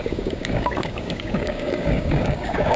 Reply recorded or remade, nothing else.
remade